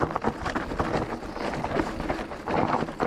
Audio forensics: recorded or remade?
recorded